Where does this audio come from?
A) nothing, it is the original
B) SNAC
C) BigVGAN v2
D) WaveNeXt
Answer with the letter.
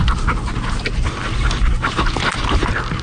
A